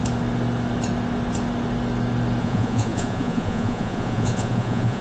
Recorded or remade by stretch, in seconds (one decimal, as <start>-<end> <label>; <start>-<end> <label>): 0.0-2.4 recorded; 2.4-5.0 remade